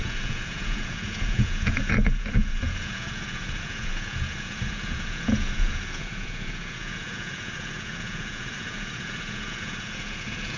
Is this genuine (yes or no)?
no